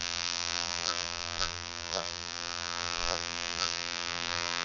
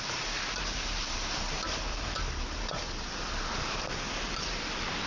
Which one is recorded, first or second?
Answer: second